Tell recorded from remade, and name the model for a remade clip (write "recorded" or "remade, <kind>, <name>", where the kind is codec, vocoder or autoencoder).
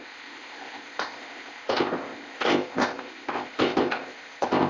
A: remade, codec, ZipCodec